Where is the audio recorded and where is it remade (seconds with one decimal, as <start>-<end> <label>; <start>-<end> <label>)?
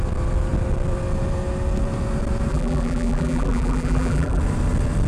0.0-2.5 recorded; 2.5-4.4 remade; 4.4-5.1 recorded